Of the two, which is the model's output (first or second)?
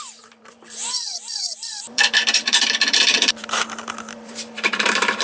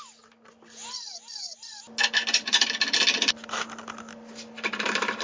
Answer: first